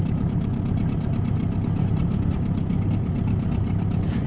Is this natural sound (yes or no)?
yes